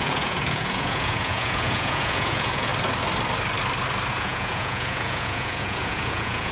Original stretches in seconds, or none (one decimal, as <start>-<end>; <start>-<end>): 2.7-4.1